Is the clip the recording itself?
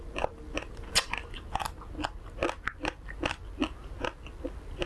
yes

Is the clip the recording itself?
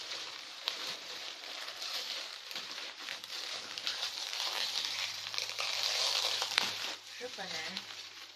no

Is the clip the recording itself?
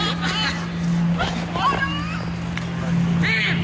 yes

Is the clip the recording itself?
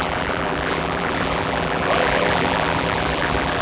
no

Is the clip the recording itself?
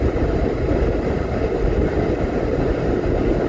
yes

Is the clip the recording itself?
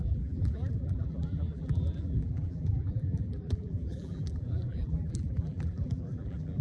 no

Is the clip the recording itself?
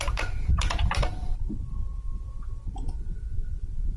no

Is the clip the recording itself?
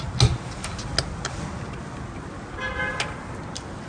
yes